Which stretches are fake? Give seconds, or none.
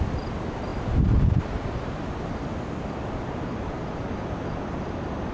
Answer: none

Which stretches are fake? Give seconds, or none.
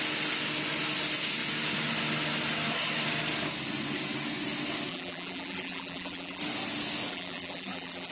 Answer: 4.9-6.4 (vocoder, BigVGAN v2); 7.1-8.1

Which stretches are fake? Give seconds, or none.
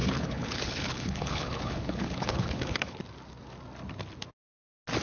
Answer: 0.0-3.0 (codec, HILCodec)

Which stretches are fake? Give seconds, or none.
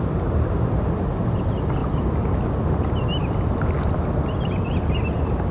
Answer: none